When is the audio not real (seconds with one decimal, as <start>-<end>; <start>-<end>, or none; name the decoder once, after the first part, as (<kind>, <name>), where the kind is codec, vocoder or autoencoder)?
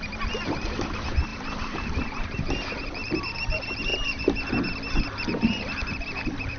0.0-3.9 (vocoder, BigVGAN v2); 4.9-6.6